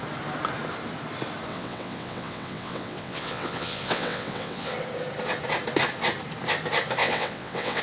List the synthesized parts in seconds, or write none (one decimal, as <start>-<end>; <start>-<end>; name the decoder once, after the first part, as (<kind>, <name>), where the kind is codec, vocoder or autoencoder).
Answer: 1.5-4.7 (vocoder, WaveNeXt); 7.0-7.8